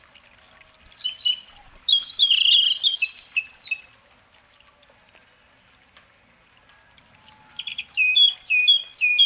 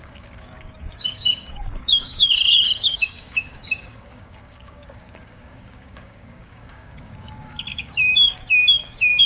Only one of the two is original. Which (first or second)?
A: first